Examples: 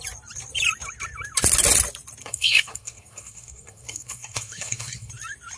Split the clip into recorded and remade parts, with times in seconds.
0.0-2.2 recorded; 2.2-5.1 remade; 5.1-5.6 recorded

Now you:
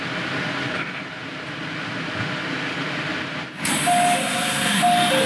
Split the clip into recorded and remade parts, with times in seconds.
0.0-4.2 recorded; 4.2-4.8 remade; 4.8-5.3 recorded

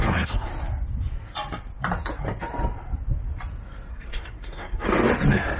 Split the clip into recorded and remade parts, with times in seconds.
0.0-0.5 remade; 0.5-3.9 recorded; 3.9-4.9 remade; 4.9-5.6 recorded

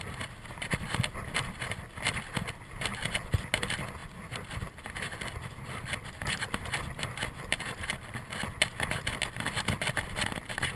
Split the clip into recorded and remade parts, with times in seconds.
0.0-10.8 recorded